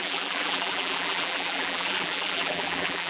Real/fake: fake